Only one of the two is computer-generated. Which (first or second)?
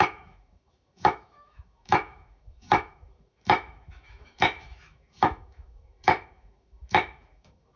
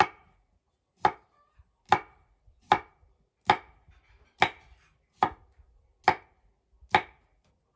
first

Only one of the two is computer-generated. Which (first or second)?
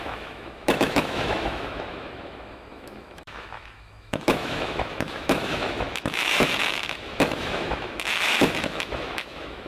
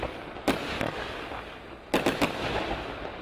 first